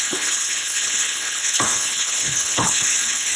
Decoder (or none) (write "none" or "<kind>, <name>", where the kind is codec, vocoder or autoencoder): codec, HILCodec